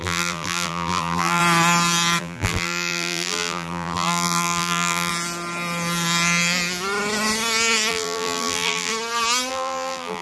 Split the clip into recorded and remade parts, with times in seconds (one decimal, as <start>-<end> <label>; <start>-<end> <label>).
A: 0.0-1.4 remade; 1.4-2.2 recorded; 2.2-5.1 remade; 5.1-7.9 recorded; 7.9-8.9 remade; 8.9-9.5 recorded; 9.5-10.2 remade